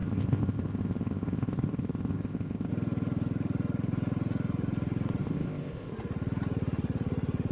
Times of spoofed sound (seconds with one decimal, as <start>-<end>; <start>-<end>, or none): 0.0-2.7; 5.2-5.9